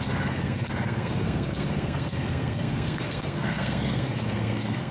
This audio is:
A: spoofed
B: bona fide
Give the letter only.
A